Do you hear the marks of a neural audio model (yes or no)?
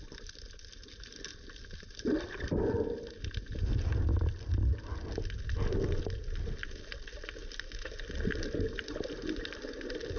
no